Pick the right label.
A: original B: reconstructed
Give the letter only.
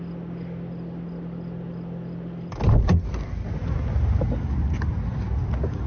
A